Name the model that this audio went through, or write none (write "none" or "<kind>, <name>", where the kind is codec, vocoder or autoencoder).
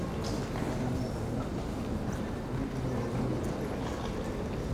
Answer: none